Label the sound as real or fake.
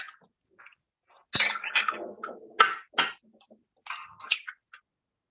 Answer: real